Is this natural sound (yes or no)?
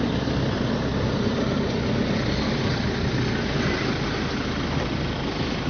yes